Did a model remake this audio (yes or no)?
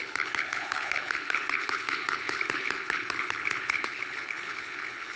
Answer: yes